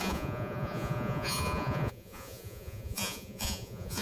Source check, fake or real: fake